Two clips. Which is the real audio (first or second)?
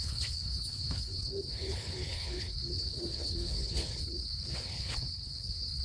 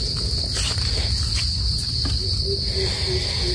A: second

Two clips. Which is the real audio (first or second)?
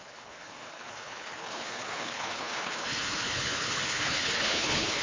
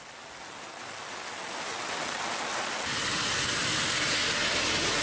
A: second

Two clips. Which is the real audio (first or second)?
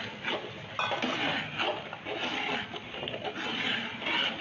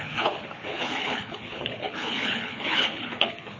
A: first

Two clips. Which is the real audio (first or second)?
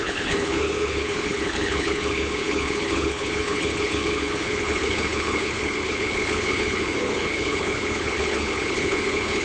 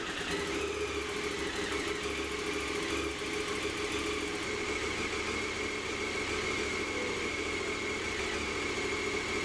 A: second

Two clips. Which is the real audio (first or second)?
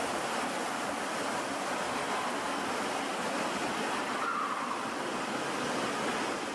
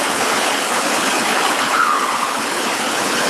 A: first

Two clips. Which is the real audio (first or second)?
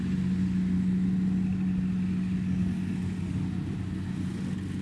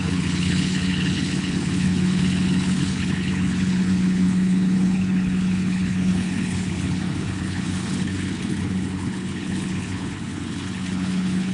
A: first